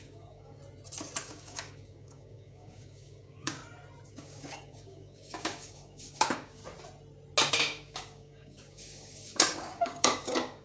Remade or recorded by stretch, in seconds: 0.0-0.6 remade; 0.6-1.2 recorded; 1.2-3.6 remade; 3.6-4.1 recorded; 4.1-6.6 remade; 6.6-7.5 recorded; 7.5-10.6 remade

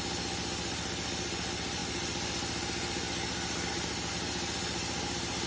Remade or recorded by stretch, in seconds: 0.0-5.5 recorded

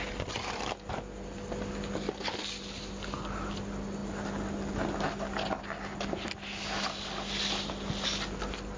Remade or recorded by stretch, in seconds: 0.0-8.8 recorded

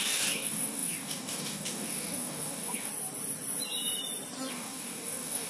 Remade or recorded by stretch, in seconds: 0.0-2.9 remade; 2.9-4.5 recorded; 4.5-5.5 remade

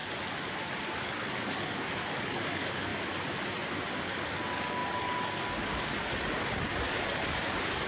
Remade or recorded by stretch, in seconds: 0.0-1.0 recorded; 1.0-2.9 remade; 2.9-4.0 recorded; 4.0-7.9 remade

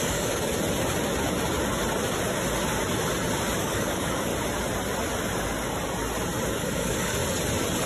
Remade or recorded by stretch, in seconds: 0.0-0.5 remade; 0.5-3.6 recorded; 3.6-4.3 remade; 4.3-6.5 recorded; 6.5-7.2 remade; 7.2-7.9 recorded